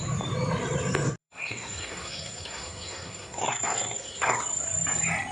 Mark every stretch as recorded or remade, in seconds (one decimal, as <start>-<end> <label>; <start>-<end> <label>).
0.0-1.2 recorded; 1.2-4.4 remade; 4.4-5.3 recorded